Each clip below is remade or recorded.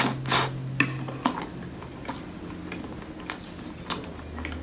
recorded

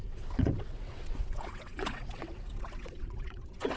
remade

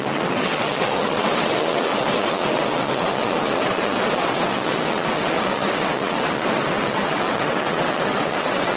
remade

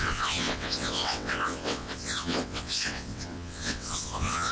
remade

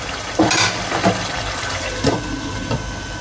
recorded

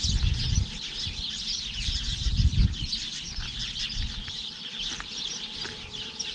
recorded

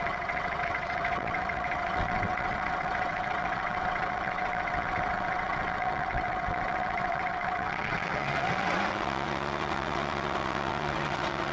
remade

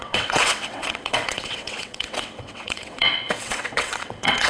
remade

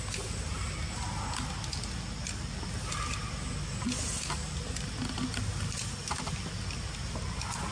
recorded